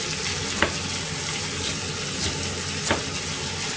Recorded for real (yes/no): yes